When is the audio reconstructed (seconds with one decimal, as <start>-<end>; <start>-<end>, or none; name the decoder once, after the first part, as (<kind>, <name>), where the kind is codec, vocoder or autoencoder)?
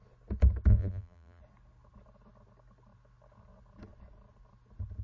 0.7-1.4 (vocoder, BigVGAN v2)